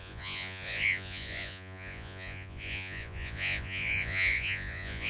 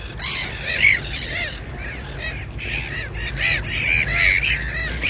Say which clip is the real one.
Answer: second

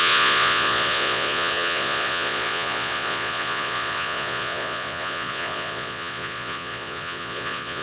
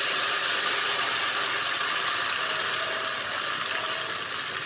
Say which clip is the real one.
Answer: second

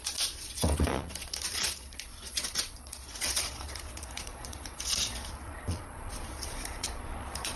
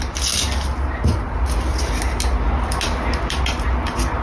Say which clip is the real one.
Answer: second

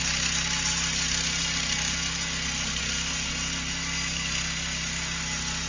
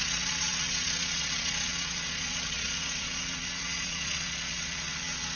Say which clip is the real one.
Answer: first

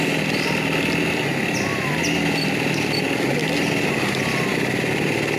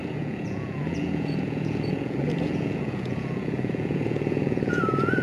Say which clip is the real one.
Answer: first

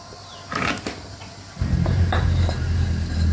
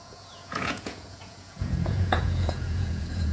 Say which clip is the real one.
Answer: first